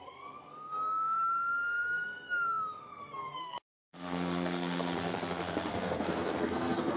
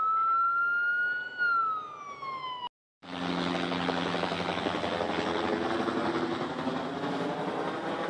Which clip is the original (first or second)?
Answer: second